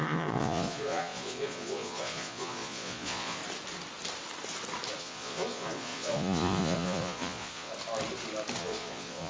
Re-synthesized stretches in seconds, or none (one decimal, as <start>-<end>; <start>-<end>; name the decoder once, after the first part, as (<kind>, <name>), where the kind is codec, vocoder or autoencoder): 0.0-3.4 (vocoder, Vocos); 5.0-7.7; 8.6-9.3